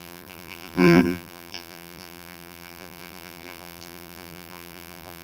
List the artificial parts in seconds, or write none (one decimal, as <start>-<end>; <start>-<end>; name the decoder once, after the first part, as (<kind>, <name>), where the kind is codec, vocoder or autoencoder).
0.0-5.2 (vocoder, BigVGAN v2)